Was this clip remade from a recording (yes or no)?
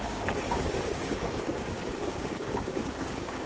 yes